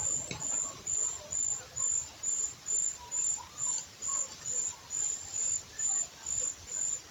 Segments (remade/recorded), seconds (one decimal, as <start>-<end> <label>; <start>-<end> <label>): 0.0-2.0 recorded; 2.0-3.6 remade; 3.6-7.1 recorded